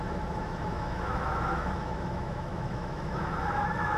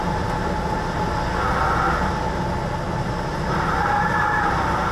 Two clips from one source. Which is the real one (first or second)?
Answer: second